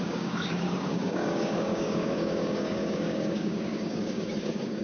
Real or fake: fake